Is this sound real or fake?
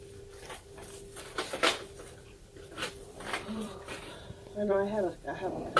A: fake